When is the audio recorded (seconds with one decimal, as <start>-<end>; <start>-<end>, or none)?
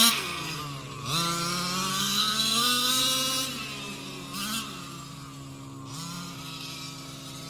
0.6-1.9; 3.0-7.5